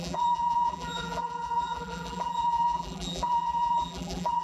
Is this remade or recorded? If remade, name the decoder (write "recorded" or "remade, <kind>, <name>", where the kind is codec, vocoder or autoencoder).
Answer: remade, vocoder, BigVGAN v2